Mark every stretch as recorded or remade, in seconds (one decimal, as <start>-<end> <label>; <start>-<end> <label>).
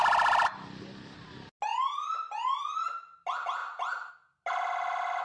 0.0-5.2 recorded